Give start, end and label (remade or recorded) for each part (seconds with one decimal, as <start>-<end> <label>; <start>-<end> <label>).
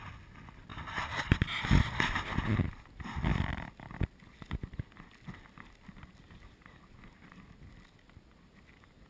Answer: 0.0-9.1 recorded